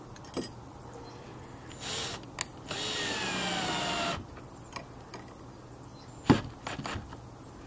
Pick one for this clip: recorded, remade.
recorded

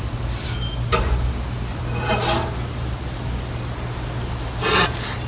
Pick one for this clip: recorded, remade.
recorded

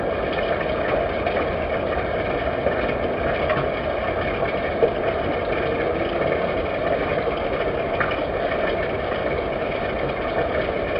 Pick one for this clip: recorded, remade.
recorded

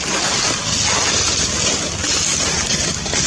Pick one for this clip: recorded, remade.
recorded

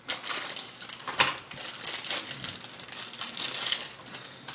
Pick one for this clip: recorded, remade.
recorded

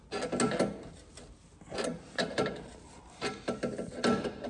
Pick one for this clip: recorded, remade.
recorded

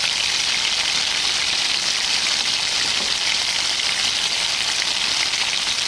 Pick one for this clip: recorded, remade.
recorded